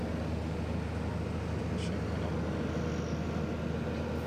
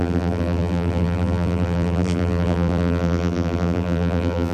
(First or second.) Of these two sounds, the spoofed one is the second